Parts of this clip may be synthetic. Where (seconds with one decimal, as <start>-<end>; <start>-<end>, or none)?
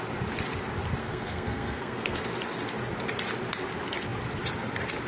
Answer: 1.0-2.3